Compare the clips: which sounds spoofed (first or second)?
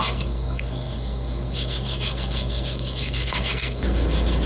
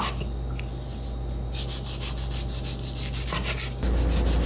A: first